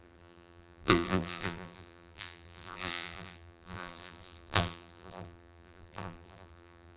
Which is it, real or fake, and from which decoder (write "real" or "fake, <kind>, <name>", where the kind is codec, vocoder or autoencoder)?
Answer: fake, vocoder, BigVGAN v2